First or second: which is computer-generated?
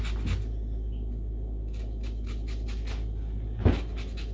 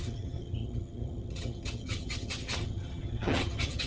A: second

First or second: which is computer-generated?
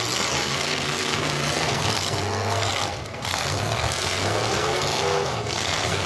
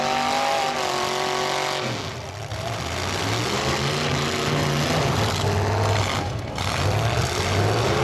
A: first